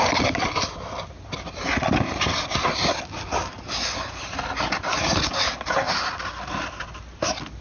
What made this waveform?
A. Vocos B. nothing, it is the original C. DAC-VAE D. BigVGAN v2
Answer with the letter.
B